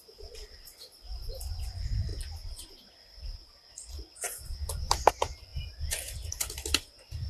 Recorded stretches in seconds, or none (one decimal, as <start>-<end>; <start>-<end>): 2.1-5.1; 5.5-6.3